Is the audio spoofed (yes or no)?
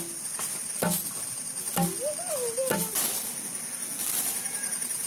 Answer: no